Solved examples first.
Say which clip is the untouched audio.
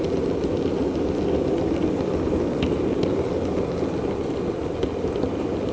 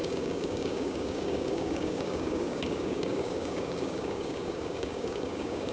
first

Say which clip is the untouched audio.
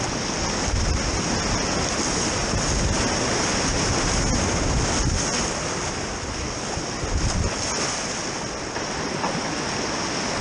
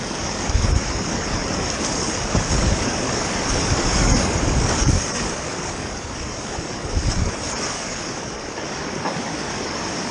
first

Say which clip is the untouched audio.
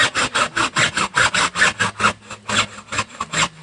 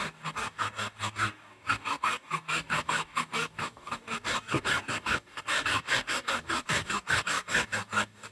first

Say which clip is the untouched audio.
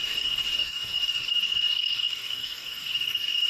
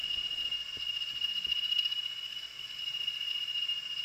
second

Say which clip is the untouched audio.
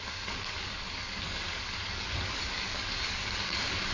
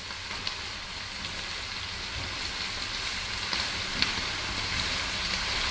second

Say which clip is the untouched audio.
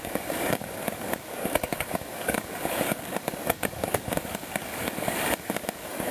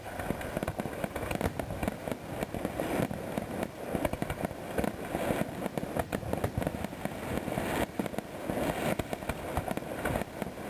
second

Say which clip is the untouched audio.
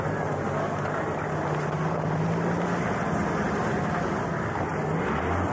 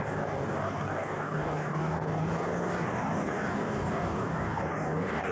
first